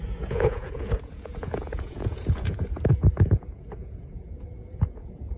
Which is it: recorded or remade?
remade